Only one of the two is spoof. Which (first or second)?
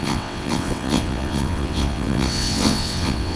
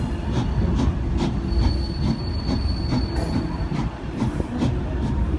first